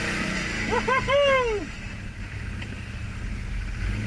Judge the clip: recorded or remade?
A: recorded